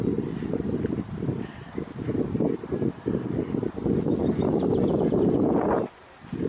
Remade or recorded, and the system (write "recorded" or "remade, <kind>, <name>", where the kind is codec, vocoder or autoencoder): recorded